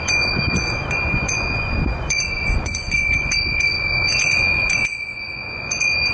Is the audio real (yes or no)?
no